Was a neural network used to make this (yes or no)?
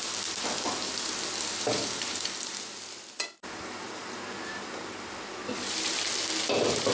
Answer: no